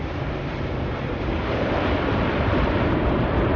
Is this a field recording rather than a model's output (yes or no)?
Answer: no